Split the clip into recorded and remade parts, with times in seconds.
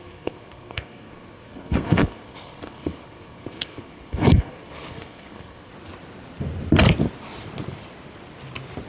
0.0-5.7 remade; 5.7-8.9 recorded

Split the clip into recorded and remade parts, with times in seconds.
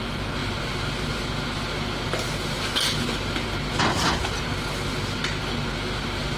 0.0-6.4 recorded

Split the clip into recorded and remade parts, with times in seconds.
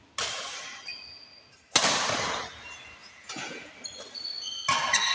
0.0-3.0 recorded; 3.0-3.7 remade; 3.7-5.1 recorded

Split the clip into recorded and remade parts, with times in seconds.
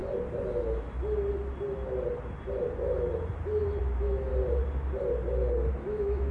0.0-3.8 recorded; 3.8-4.3 remade; 4.3-5.7 recorded; 5.7-6.3 remade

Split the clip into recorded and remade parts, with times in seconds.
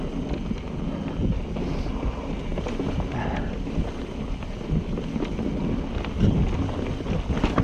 0.0-7.6 recorded